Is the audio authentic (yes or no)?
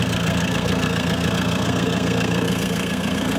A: no